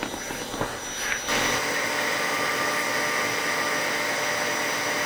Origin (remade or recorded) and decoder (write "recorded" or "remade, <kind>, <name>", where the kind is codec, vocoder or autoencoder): recorded